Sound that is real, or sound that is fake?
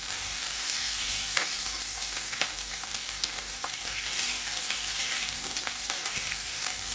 fake